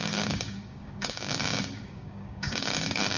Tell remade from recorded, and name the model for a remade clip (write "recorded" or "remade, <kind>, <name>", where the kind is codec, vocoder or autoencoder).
remade, codec, DAC